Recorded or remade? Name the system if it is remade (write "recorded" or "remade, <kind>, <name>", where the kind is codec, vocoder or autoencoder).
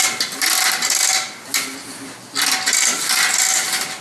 recorded